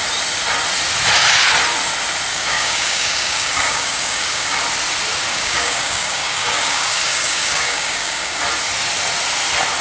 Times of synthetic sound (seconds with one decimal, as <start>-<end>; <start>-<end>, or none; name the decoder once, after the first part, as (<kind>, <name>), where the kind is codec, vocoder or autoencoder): 2.3-4.6 (codec, DAC); 5.3-8.4

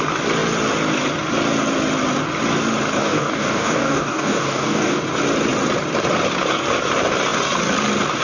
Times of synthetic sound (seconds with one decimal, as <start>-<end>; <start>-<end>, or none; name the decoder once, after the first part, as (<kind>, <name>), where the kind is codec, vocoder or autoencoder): 3.0-5.0 (codec, DAC)

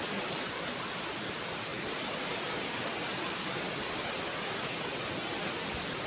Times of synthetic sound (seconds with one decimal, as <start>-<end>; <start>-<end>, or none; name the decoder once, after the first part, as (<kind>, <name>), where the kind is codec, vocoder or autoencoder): none

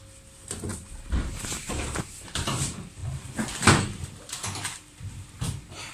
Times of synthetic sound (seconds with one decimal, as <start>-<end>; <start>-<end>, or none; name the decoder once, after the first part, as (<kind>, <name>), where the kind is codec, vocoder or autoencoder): 0.7-2.1 (vocoder, BigVGAN v2)

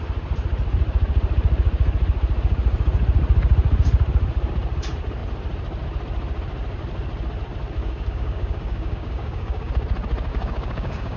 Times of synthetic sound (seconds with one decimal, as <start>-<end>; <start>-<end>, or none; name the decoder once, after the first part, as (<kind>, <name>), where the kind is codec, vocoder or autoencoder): 7.8-9.7 (codec, DAC); 10.3-11.2